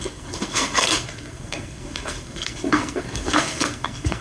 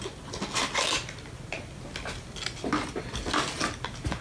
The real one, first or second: second